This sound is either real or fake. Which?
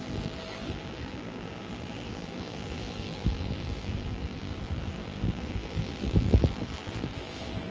fake